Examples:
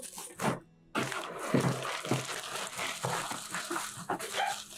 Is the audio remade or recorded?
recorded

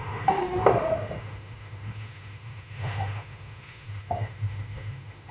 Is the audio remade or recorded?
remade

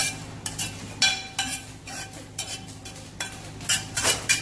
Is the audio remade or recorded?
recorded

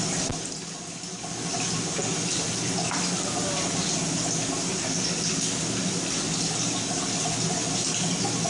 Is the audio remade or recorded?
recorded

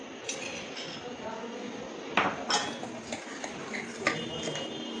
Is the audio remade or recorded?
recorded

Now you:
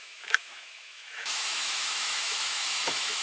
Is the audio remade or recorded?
remade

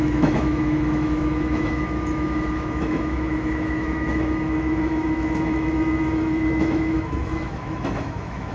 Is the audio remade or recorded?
remade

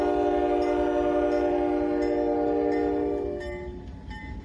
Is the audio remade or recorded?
recorded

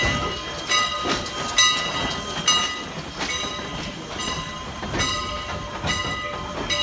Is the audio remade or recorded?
recorded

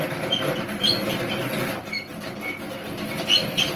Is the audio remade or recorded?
recorded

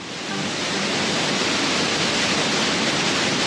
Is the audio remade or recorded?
recorded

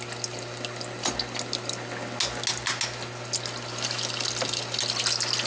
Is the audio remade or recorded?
recorded